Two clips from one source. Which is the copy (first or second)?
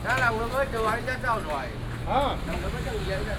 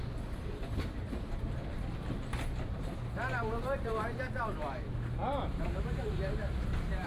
second